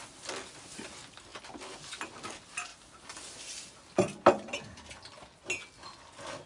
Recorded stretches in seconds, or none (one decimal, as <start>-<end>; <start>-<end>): 0.0-6.5